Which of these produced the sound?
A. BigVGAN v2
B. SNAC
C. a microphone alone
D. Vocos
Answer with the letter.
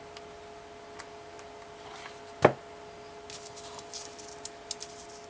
C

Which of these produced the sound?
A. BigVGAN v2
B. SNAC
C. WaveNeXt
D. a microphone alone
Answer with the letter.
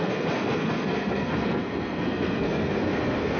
B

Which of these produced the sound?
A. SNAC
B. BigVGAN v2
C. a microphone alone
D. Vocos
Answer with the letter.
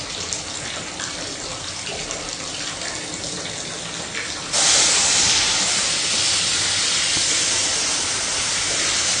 C